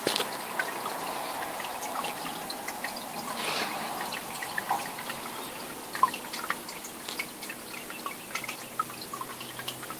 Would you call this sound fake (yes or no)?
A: no